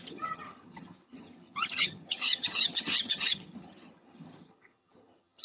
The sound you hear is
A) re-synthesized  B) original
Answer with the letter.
A